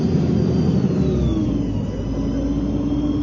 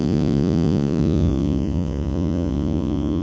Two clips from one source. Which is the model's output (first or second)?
second